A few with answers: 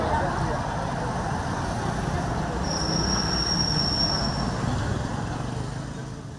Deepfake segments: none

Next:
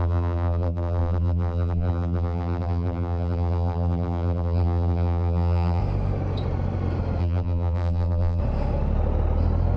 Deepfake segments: 0.0-5.8; 7.2-8.4